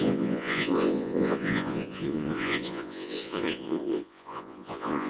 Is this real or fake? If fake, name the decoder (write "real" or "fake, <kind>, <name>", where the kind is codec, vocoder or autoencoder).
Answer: fake, vocoder, Vocos